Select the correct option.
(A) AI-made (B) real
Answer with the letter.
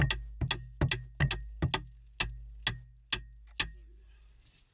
B